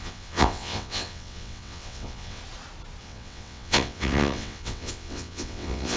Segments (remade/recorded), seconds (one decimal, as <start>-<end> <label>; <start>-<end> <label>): 0.0-2.4 remade; 2.4-3.0 recorded; 3.0-6.0 remade